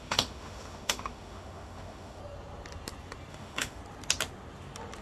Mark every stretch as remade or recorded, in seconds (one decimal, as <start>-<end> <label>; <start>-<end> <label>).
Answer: 0.0-2.2 remade; 2.2-3.3 recorded; 3.3-3.8 remade; 3.8-5.0 recorded